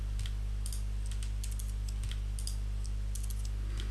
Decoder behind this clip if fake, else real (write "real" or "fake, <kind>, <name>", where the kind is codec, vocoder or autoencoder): real